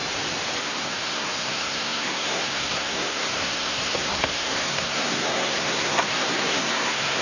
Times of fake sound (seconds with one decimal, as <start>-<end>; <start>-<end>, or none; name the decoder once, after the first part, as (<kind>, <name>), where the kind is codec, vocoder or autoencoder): 0.6-7.2 (codec, SNAC)